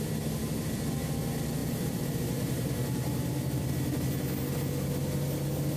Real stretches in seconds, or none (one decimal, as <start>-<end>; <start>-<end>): 0.0-1.6; 3.7-5.8